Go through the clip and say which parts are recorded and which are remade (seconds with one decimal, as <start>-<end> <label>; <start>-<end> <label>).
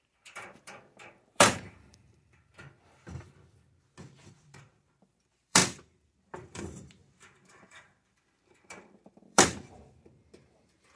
0.0-2.5 remade; 2.5-4.2 recorded; 4.2-11.0 remade